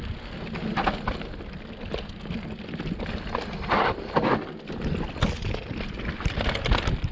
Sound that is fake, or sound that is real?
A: real